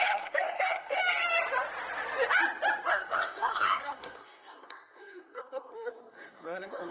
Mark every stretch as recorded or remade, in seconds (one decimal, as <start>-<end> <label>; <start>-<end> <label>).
0.0-1.0 remade; 1.0-2.9 recorded; 2.9-6.9 remade